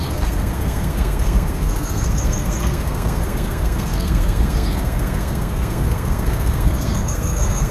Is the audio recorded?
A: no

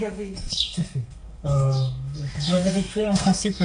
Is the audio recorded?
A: no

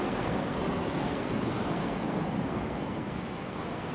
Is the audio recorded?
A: no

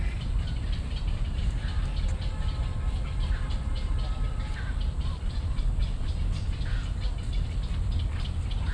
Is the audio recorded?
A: no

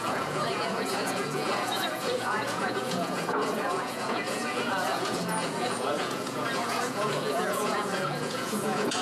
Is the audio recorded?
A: no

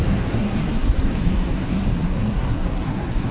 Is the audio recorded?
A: no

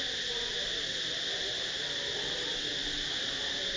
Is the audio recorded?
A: yes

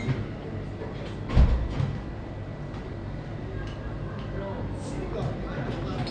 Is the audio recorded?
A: yes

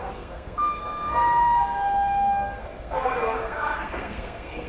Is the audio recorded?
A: no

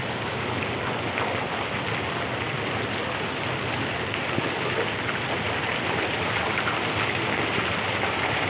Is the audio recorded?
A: yes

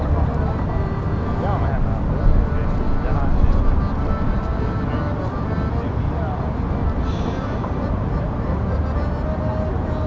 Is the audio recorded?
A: yes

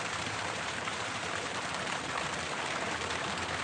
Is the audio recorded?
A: no